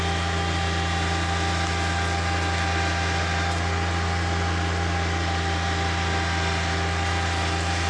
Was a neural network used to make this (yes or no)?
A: no